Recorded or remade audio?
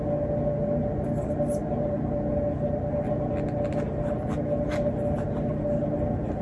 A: recorded